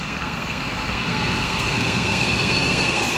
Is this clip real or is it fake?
fake